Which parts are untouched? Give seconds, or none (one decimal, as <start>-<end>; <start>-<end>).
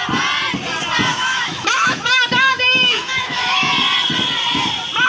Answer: 0.0-1.1; 3.7-5.1